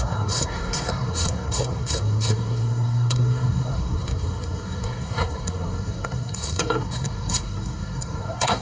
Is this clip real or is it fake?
fake